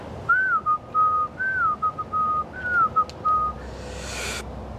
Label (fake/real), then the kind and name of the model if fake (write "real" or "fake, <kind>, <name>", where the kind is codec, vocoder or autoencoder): real